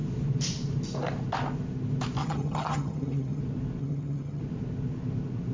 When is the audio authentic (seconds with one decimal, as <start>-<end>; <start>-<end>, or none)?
0.0-2.2; 3.4-3.8; 4.4-5.5